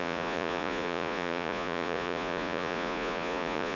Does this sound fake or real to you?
fake